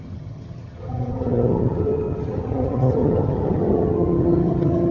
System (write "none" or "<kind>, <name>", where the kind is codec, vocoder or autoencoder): vocoder, HiFi-GAN